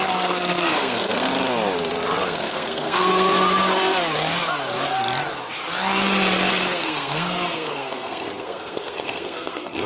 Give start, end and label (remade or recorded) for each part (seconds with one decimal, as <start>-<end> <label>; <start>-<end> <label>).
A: 0.0-1.3 remade; 1.3-2.2 recorded; 2.2-3.3 remade; 3.3-6.5 recorded; 6.5-9.9 remade